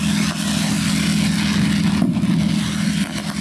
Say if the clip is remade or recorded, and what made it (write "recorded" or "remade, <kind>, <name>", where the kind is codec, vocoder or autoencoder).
recorded